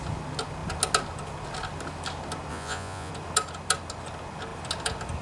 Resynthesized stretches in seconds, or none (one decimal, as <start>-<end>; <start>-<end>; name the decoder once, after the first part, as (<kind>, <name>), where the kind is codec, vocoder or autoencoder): 2.5-3.1 (vocoder, Vocos)